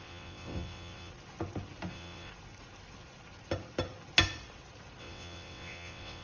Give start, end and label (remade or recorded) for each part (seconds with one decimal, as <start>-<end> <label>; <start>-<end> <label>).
0.0-1.1 remade; 1.1-1.9 recorded; 1.9-2.3 remade; 2.3-5.0 recorded; 5.0-6.2 remade